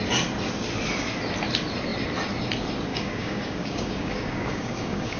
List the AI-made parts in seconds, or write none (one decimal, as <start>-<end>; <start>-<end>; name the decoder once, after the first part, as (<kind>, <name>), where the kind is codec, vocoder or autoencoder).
2.9-5.2 (codec, DAC)